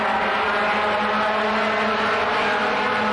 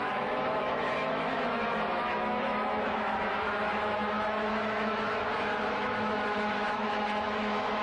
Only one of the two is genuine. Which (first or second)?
first